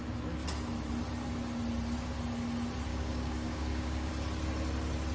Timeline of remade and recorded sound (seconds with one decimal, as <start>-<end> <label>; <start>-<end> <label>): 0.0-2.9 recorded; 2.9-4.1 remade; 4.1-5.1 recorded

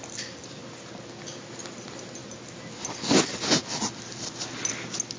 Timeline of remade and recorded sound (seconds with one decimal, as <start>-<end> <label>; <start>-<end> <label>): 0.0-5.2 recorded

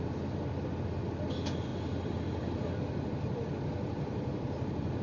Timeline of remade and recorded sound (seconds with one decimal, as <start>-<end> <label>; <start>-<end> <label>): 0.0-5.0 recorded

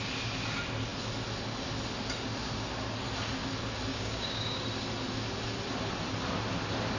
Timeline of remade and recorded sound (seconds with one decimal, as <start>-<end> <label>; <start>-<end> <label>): 0.0-3.9 recorded; 3.9-4.6 remade; 4.6-7.0 recorded

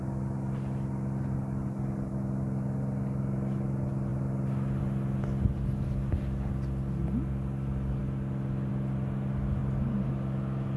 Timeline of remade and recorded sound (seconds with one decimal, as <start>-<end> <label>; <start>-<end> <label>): 0.0-10.8 recorded

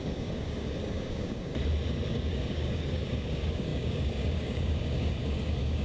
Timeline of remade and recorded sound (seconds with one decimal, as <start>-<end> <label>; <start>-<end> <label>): 0.0-1.5 remade; 1.5-2.1 recorded; 2.1-5.8 remade